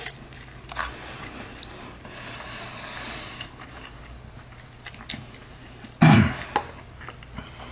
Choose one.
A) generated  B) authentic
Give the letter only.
B